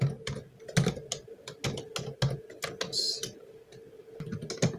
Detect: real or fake real